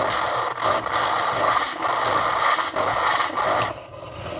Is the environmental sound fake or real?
real